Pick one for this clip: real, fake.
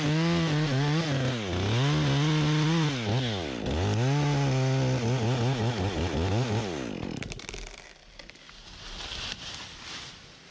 real